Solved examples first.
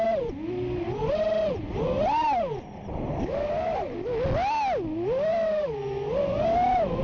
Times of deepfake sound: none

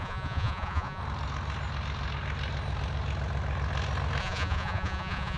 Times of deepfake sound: 0.0-1.0; 4.2-5.4